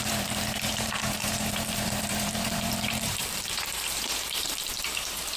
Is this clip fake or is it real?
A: fake